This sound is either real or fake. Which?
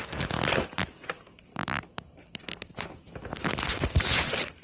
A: real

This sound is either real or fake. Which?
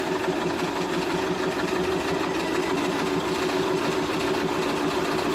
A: real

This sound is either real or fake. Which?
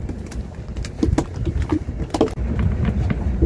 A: real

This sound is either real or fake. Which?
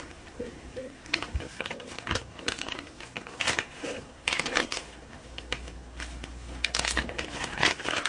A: fake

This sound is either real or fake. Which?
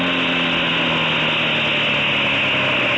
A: real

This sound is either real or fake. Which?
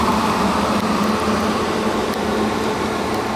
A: real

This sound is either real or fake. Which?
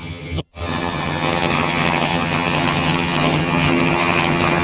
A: fake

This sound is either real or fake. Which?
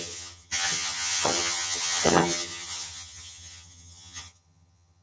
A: fake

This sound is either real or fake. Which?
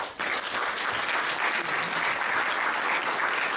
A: real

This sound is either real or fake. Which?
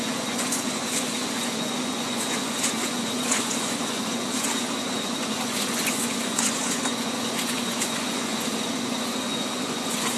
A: fake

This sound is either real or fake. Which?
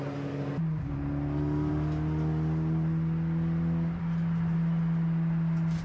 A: real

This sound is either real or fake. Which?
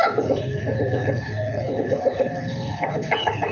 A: fake